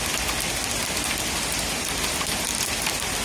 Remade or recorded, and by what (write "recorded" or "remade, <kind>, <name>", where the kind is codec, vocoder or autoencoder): recorded